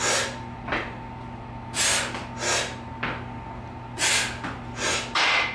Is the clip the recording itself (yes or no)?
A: yes